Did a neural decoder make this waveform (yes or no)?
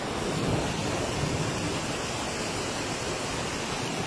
no